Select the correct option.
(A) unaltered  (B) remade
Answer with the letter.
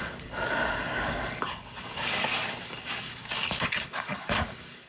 B